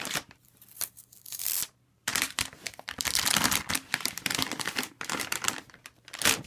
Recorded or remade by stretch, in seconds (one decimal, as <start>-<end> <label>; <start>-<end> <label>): 0.0-6.5 remade